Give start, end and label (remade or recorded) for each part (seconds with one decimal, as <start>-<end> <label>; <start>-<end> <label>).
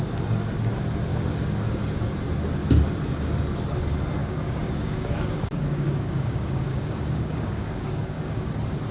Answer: 0.0-1.1 recorded; 1.1-2.0 remade; 2.0-4.2 recorded; 4.2-8.5 remade; 8.5-8.9 recorded